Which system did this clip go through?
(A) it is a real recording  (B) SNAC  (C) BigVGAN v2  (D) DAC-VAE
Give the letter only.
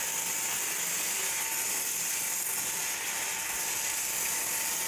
A